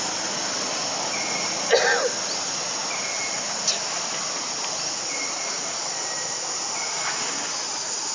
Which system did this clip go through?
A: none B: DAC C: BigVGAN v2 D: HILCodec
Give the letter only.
A